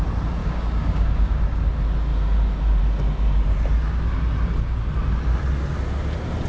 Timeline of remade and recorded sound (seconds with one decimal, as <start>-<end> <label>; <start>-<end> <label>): 0.0-0.4 recorded; 0.4-1.4 remade; 1.4-6.5 recorded